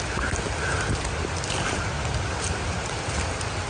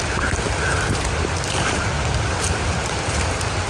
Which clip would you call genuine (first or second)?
first